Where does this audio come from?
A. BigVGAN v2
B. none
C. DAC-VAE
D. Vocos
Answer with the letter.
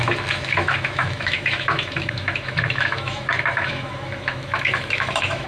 C